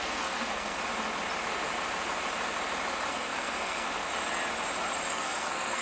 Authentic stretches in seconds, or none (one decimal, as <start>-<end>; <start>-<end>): 0.8-3.1; 4.0-5.1